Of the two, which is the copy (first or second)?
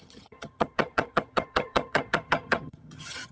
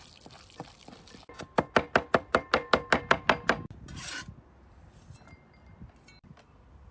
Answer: first